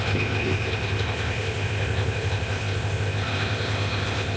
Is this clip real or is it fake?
fake